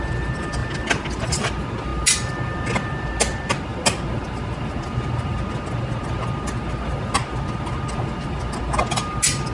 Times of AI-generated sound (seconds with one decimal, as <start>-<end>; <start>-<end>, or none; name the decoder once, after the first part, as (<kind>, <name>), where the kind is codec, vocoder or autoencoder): none